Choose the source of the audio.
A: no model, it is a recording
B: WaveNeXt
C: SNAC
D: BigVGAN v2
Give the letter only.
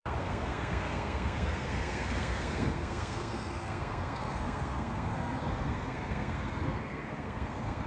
C